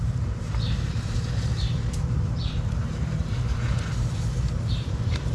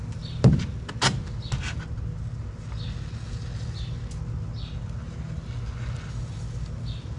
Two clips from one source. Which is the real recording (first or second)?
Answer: second